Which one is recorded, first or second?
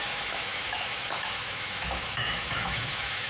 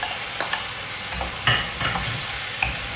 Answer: second